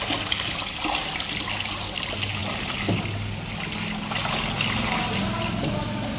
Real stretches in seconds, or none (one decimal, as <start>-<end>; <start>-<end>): 0.0-6.2